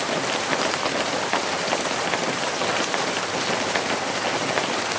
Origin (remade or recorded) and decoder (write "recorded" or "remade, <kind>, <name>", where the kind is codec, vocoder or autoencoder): recorded